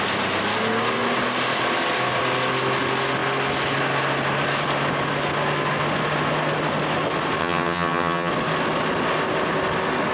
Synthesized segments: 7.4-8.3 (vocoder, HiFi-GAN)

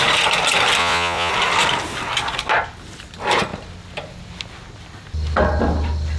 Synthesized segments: 0.8-1.3 (vocoder, Vocos)